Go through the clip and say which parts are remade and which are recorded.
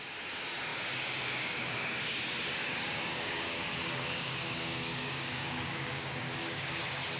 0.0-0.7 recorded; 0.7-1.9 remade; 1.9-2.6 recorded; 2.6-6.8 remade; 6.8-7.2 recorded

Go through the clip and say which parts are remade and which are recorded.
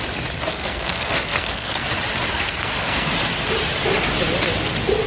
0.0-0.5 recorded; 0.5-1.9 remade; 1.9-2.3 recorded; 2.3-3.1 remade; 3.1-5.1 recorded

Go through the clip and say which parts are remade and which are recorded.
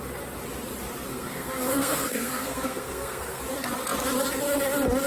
0.0-1.1 recorded; 1.1-3.4 remade; 3.4-5.1 recorded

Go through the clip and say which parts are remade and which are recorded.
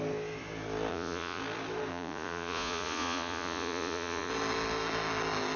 0.0-0.9 recorded; 0.9-1.4 remade; 1.4-1.9 recorded; 1.9-4.3 remade; 4.3-5.6 recorded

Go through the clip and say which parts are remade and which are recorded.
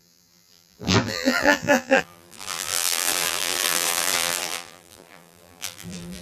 0.0-6.2 remade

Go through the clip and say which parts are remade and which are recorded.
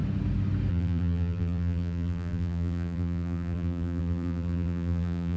0.0-0.7 recorded; 0.7-5.4 remade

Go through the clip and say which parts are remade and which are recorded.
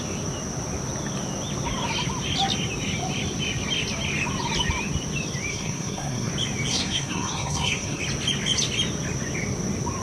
0.0-5.5 recorded; 5.5-6.3 remade; 6.3-6.7 recorded; 6.7-8.0 remade; 8.0-10.0 recorded